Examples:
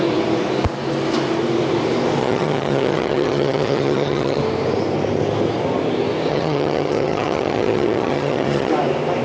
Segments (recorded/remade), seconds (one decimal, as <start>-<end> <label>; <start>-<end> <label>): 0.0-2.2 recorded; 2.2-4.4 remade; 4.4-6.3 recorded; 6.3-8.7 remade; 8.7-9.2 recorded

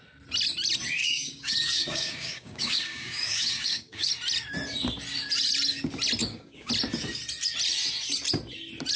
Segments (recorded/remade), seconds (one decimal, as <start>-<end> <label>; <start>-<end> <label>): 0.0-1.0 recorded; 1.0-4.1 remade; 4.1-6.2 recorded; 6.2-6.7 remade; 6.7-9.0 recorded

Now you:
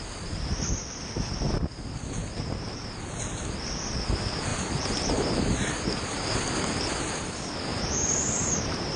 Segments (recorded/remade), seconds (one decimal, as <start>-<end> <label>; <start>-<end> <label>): 0.0-4.5 recorded; 4.5-5.3 remade; 5.3-7.7 recorded; 7.7-9.0 remade